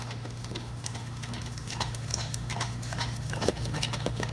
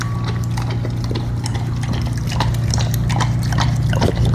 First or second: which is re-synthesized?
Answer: first